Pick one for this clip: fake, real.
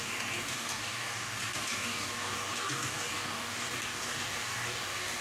fake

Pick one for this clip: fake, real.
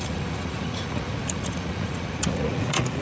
fake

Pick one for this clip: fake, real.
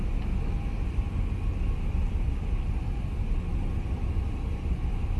real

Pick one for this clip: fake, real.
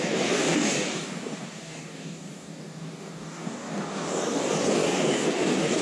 fake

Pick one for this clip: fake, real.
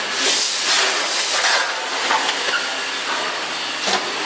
real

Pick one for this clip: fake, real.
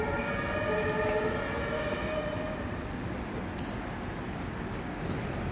real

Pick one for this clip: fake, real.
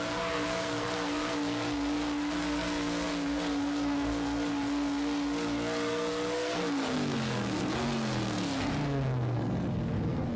fake